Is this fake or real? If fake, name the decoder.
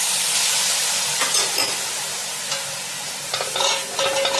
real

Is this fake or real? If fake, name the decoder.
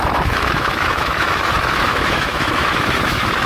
fake, autoencoder, DAC-VAE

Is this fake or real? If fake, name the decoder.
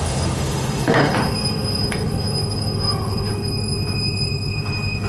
fake, autoencoder, DAC-VAE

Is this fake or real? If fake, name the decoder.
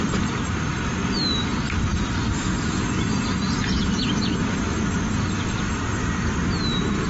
real